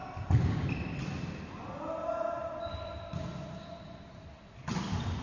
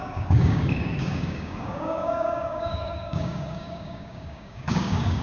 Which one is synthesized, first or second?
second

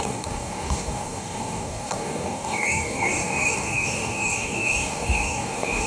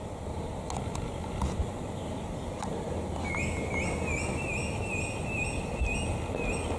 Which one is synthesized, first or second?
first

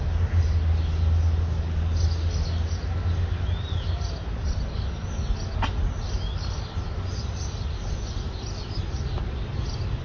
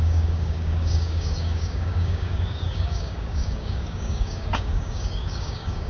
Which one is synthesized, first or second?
second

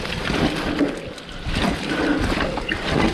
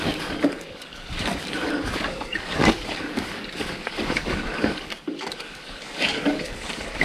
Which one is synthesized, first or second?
second